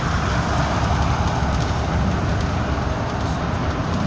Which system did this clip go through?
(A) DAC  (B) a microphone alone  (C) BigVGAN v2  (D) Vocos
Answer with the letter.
B